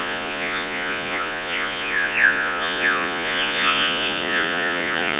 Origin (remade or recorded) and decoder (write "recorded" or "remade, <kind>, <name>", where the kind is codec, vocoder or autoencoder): remade, vocoder, Vocos